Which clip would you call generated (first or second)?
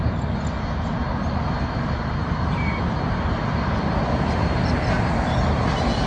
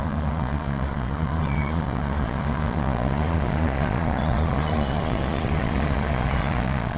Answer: second